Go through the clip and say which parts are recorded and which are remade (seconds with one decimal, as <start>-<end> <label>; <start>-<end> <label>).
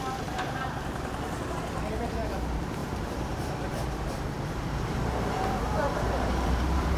0.0-2.8 recorded; 2.8-7.0 remade